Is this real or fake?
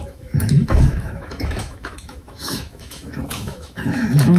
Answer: fake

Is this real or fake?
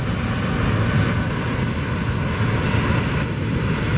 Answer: real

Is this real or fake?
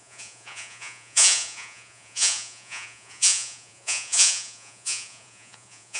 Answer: fake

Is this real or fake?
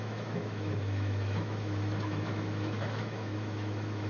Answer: fake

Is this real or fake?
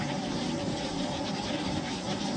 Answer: real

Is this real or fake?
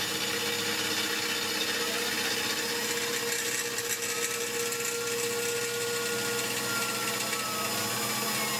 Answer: real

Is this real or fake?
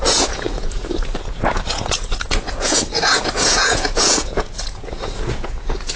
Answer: fake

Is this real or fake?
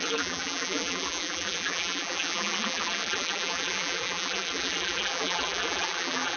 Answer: fake